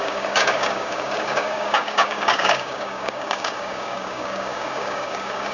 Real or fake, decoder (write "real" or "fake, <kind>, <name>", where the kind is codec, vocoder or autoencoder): fake, codec, DAC